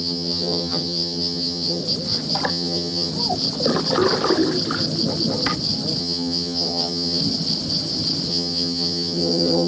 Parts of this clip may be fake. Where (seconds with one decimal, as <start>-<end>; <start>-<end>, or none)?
0.0-1.8; 2.5-3.1; 6.0-7.2; 8.3-9.7